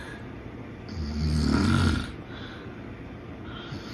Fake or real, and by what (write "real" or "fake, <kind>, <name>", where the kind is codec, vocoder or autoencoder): real